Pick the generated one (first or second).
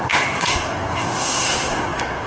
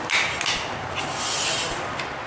first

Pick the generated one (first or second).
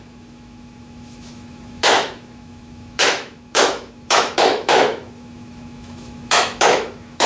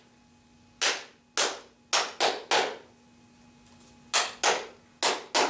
first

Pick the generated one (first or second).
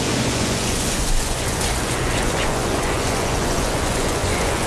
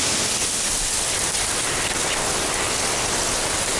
first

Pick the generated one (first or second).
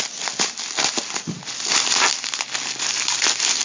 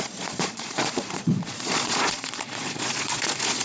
second